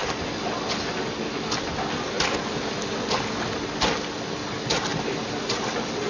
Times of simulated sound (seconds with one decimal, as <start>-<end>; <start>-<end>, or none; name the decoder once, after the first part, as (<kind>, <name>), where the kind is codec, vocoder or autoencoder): none